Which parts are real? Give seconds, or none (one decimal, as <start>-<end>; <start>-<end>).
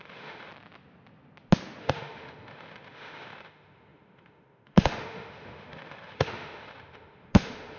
0.5-1.8